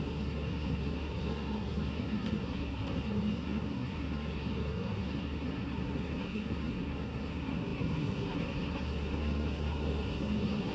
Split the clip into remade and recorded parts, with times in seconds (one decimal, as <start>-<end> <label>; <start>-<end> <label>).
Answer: 0.0-10.7 remade